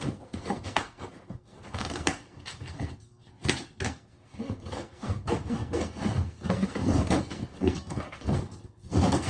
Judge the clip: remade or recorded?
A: remade